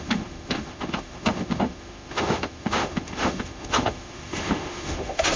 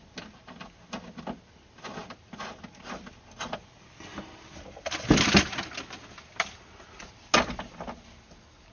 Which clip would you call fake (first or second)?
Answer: first